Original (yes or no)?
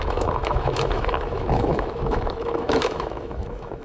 no